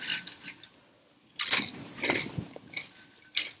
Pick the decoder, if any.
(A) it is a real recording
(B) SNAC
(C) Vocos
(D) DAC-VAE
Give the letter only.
A